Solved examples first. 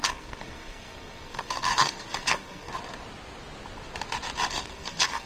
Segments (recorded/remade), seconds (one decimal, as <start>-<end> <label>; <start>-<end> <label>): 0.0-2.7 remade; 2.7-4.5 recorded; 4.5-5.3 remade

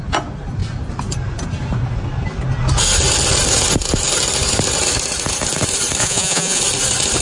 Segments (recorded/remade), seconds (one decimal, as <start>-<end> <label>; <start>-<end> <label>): 0.0-6.0 recorded; 6.0-6.6 remade; 6.6-7.2 recorded

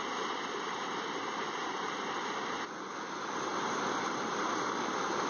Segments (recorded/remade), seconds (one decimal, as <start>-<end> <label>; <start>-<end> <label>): 0.0-5.3 recorded

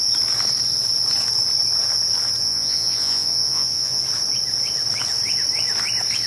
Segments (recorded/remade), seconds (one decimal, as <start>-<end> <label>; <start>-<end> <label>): 0.0-2.4 recorded; 2.4-4.0 remade; 4.0-6.3 recorded

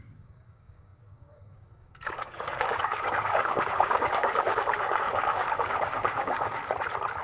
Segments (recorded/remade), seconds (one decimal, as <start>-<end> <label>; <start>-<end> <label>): 0.0-6.6 remade; 6.6-7.2 recorded